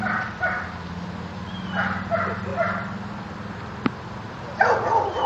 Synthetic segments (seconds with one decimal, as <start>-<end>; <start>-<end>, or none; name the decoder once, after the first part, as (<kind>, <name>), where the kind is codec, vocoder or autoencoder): none